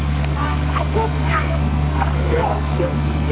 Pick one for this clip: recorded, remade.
remade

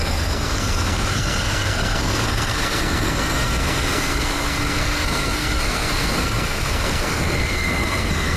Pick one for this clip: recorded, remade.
remade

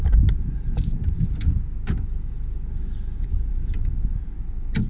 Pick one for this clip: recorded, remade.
recorded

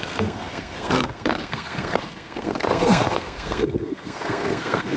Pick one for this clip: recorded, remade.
remade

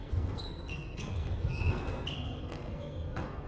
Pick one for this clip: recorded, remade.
remade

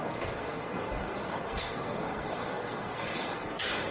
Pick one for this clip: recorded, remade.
remade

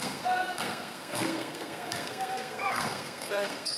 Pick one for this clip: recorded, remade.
remade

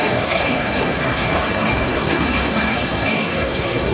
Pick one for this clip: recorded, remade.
remade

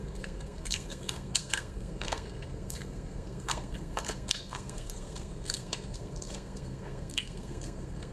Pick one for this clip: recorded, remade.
remade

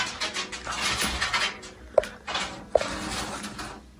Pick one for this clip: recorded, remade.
recorded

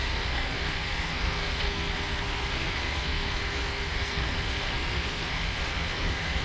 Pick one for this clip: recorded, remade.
remade